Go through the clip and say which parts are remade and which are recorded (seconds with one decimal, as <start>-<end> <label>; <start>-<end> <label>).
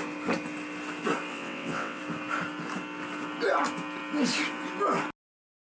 0.0-1.3 recorded; 1.3-2.0 remade; 2.0-5.7 recorded